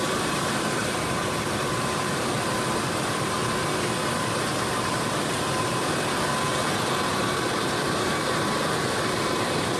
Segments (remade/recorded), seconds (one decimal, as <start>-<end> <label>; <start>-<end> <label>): 0.0-3.4 remade; 3.4-4.2 recorded; 4.2-5.8 remade; 5.8-7.1 recorded; 7.1-9.8 remade

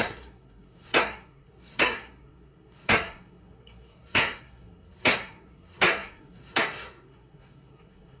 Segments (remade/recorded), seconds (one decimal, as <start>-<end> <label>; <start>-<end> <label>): 0.0-8.2 remade

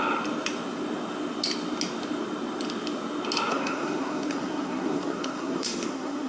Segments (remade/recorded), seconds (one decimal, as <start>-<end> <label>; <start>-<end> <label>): 0.0-3.5 recorded; 3.5-6.3 remade